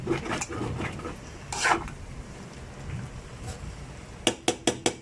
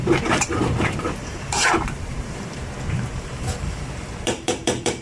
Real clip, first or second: first